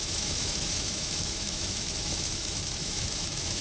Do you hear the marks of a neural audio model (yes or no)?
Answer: yes